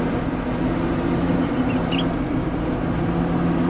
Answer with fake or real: real